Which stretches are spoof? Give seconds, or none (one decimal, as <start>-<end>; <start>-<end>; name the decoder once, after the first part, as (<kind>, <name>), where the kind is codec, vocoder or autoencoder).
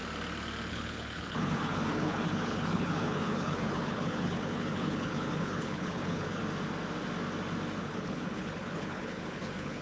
0.7-6.4 (codec, HILCodec); 7.8-9.8